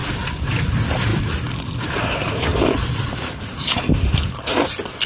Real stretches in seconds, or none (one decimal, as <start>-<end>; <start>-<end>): 0.7-2.5; 3.9-5.1